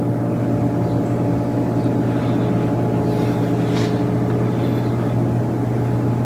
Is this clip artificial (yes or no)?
no